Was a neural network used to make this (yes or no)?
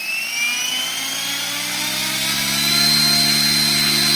no